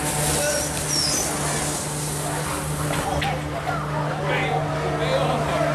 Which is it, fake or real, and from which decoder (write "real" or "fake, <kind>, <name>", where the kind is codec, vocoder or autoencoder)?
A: real